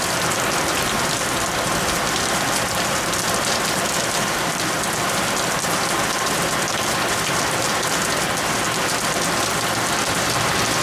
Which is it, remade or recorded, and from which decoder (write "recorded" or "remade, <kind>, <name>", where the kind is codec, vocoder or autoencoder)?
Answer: recorded